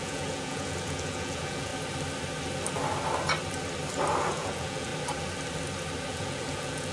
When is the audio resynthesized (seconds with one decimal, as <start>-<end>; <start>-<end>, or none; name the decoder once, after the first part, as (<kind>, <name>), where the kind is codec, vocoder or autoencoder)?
0.0-1.7 (vocoder, Vocos); 4.3-4.9; 6.1-6.9